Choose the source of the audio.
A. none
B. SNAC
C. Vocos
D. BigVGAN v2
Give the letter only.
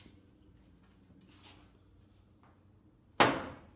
A